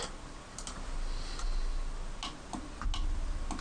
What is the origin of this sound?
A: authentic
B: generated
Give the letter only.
A